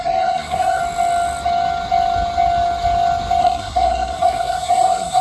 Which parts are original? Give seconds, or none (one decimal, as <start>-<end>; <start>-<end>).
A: 0.8-3.4